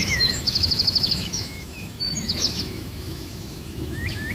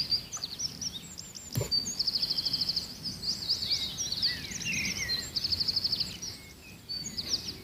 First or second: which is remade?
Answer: first